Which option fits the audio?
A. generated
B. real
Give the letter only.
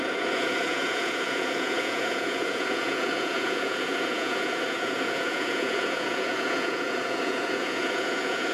A